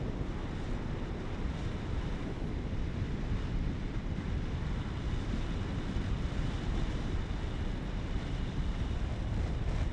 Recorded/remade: remade